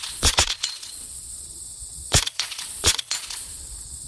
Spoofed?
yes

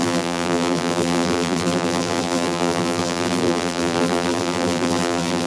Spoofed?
yes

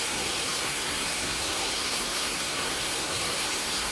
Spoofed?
yes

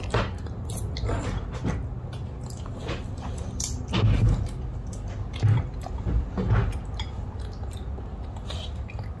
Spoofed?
no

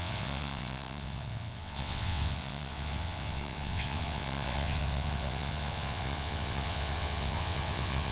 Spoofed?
yes